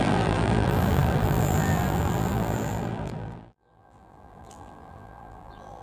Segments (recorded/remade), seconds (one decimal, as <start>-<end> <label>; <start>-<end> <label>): 0.0-5.8 remade